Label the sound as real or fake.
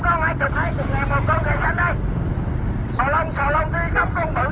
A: real